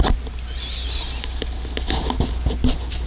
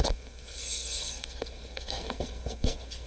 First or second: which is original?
first